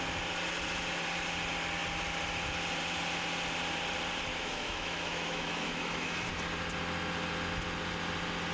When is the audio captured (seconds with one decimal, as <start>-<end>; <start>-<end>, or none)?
0.0-4.3; 6.3-8.5